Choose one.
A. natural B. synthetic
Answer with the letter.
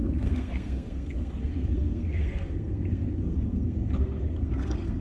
B